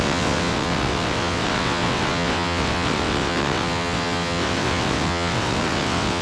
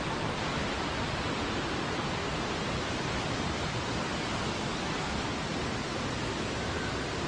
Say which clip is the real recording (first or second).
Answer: second